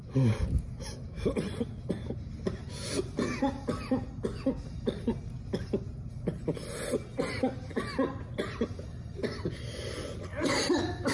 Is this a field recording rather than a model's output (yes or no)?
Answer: yes